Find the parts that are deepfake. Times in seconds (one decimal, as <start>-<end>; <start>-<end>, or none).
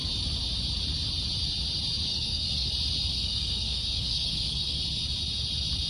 2.1-2.7; 3.1-4.8